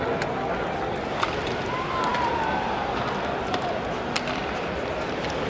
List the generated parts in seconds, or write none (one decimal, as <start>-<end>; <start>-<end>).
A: 2.1-5.5